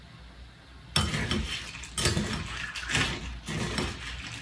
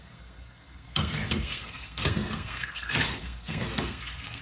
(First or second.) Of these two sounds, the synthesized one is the second